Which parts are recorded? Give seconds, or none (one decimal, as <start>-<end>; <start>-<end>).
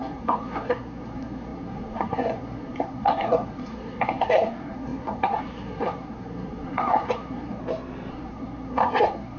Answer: 7.6-8.1